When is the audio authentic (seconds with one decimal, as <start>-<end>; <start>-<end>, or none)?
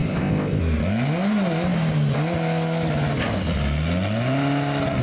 0.6-5.0